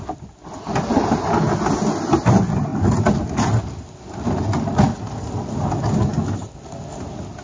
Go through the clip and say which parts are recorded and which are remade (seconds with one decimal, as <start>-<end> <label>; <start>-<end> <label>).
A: 0.0-7.4 recorded